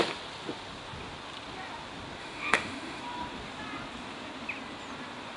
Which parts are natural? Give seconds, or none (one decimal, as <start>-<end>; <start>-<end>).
0.0-2.2; 3.0-5.4